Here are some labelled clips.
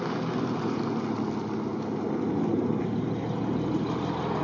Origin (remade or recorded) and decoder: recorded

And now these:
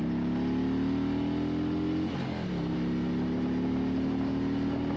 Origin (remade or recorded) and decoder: recorded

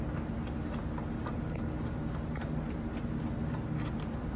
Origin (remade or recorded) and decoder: recorded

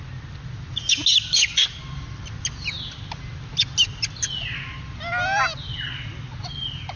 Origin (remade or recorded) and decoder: recorded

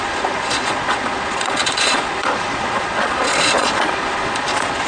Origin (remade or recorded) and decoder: remade, vocoder, Vocos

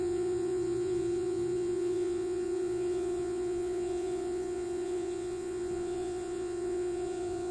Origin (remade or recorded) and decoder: remade, vocoder, Vocos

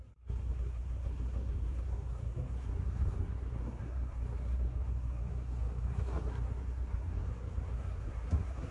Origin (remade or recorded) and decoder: remade, codec, SNAC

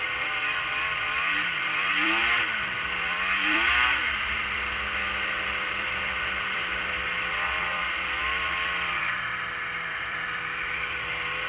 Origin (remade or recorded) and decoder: remade, vocoder, BigVGAN v2